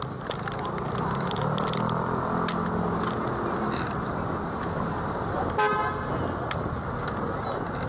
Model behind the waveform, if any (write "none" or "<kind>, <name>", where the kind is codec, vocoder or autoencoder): none